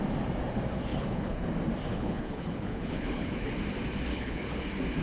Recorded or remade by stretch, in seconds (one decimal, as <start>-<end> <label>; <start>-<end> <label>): 0.0-0.9 recorded; 0.9-1.5 remade; 1.5-1.9 recorded; 1.9-3.5 remade; 3.5-4.1 recorded; 4.1-4.6 remade; 4.6-5.0 recorded